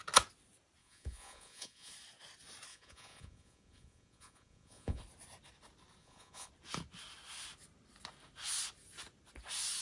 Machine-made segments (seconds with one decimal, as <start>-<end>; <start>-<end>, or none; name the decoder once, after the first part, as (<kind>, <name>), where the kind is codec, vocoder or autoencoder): 0.8-1.9 (vocoder, Vocos); 2.7-5.0; 6.0-6.5